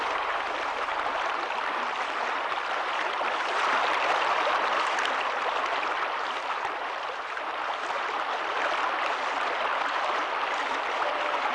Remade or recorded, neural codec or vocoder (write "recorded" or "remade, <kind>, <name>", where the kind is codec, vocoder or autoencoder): recorded